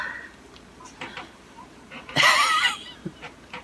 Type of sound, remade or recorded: remade